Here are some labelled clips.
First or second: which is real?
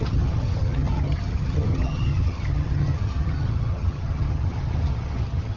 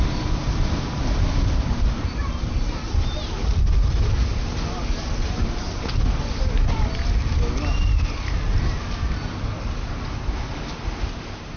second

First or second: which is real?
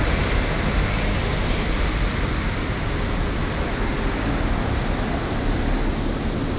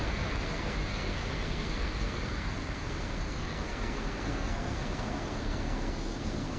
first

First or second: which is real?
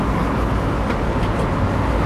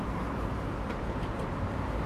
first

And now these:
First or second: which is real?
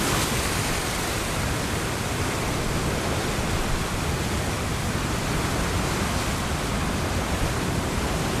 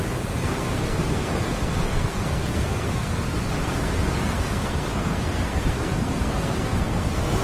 first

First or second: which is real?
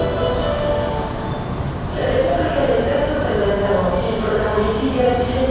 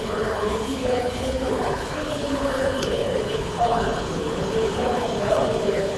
first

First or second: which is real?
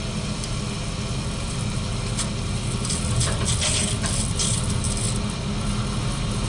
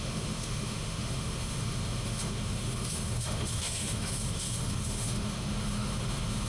first